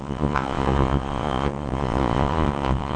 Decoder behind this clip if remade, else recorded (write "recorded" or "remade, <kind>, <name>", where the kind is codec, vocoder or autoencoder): remade, vocoder, Vocos